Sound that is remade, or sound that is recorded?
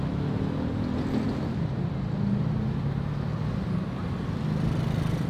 recorded